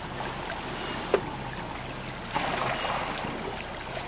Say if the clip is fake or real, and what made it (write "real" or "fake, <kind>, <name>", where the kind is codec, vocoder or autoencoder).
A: real